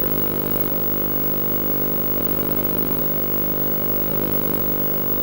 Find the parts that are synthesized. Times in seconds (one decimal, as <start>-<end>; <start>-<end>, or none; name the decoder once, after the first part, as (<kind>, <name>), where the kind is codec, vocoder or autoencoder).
0.0-0.7 (vocoder, Vocos); 2.2-3.0; 4.1-4.6